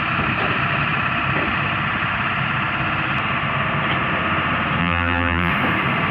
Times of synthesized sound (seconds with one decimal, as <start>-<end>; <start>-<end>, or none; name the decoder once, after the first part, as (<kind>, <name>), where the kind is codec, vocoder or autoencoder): 4.8-5.5 (vocoder, BigVGAN v2)